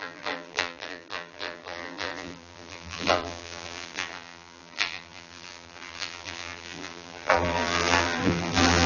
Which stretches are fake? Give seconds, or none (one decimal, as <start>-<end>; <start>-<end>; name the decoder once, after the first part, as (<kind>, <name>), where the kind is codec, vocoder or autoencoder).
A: 0.0-8.9 (vocoder, BigVGAN v2)